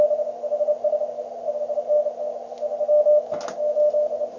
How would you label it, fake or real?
real